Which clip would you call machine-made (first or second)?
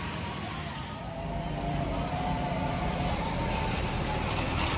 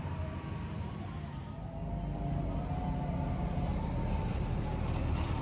first